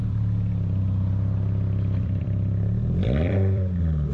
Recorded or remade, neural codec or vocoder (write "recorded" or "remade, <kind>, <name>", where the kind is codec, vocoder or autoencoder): remade, vocoder, BigVGAN v2